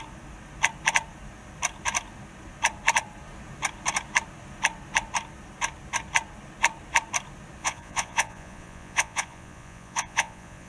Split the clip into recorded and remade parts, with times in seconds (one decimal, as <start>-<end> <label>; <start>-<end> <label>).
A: 0.0-7.6 recorded; 7.6-10.7 remade